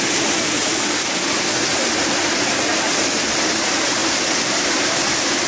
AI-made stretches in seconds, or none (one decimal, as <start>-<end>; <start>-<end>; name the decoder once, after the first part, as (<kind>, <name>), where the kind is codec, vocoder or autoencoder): 0.7-1.3 (codec, DAC)